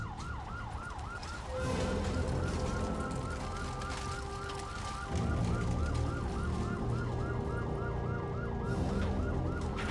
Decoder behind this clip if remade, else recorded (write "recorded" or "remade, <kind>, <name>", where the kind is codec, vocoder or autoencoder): recorded